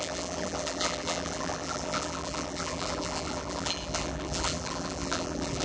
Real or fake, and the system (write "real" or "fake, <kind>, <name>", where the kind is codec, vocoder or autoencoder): fake, vocoder, BigVGAN v2